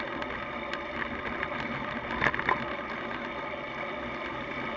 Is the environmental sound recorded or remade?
recorded